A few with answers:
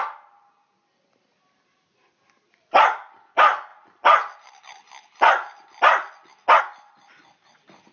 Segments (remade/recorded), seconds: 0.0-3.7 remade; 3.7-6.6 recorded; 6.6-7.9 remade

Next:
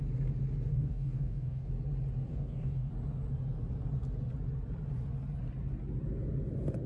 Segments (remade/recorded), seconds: 0.0-0.7 recorded; 0.7-1.7 remade; 1.7-2.3 recorded; 2.3-2.9 remade; 2.9-6.9 recorded

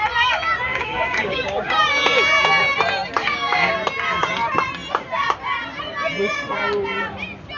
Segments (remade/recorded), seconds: 0.0-0.7 recorded; 0.7-1.9 remade; 1.9-3.2 recorded; 3.2-3.7 remade; 3.7-7.6 recorded

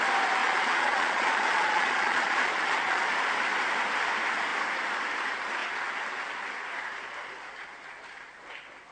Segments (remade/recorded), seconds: 0.0-0.4 recorded; 0.4-3.0 remade; 3.0-8.9 recorded

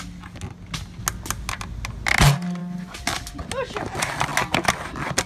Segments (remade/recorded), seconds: 0.0-5.3 recorded

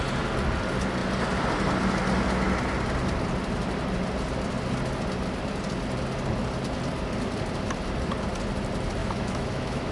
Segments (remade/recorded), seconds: 0.0-9.0 recorded; 9.0-9.9 remade

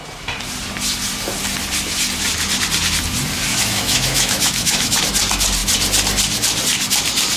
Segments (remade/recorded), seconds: 0.0-3.5 recorded; 3.5-5.0 remade; 5.0-7.4 recorded

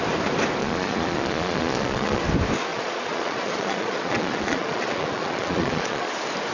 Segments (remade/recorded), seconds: 0.0-0.6 recorded; 0.6-2.2 remade; 2.2-2.7 recorded; 2.7-6.1 remade; 6.1-6.5 recorded